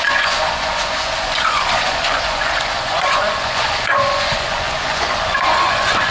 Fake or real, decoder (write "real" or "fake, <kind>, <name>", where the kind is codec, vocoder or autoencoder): fake, vocoder, Vocos